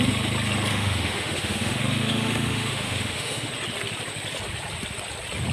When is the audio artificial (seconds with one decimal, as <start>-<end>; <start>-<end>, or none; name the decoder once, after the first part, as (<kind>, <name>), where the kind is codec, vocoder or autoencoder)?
0.7-3.5 (autoencoder, DAC-VAE)